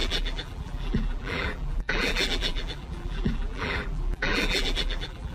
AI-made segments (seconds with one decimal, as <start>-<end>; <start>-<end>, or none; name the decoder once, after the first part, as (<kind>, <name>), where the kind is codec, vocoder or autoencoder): 0.0-5.3 (vocoder, BigVGAN v2)